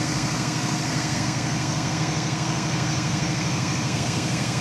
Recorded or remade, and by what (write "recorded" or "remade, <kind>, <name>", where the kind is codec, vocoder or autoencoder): remade, codec, SNAC